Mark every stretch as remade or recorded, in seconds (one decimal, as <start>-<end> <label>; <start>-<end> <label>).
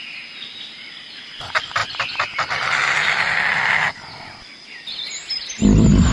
0.0-6.1 recorded